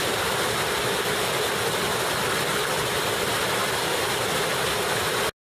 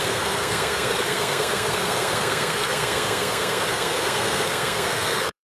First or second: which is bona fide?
first